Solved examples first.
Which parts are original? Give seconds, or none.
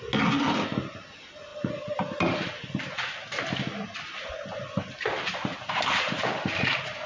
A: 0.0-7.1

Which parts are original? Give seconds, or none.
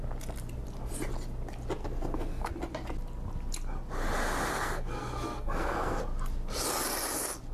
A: 0.0-1.8; 2.5-4.5; 6.0-7.5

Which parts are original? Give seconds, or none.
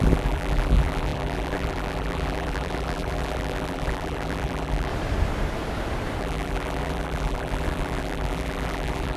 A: 4.9-6.2